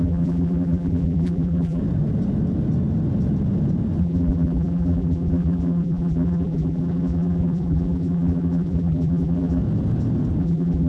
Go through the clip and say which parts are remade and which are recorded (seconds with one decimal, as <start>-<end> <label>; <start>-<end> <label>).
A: 0.0-1.8 remade; 1.8-4.0 recorded; 4.0-9.6 remade; 9.6-10.4 recorded; 10.4-10.9 remade